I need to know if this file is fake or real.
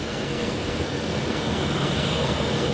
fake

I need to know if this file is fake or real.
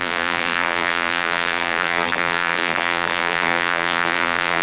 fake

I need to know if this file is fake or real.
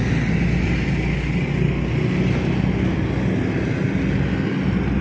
real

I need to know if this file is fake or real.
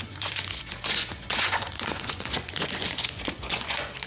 fake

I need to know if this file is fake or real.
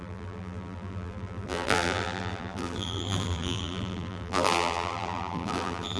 fake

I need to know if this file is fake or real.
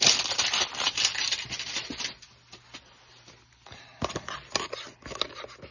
real